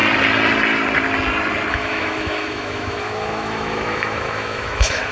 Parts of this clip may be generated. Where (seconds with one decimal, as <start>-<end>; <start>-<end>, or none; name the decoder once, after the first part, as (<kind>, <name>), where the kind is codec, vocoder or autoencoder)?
1.7-5.1 (autoencoder, DAC-VAE)